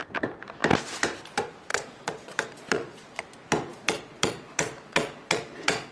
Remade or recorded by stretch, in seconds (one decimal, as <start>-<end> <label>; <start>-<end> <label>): 0.0-1.7 recorded; 1.7-3.2 remade; 3.2-3.7 recorded; 3.7-5.9 remade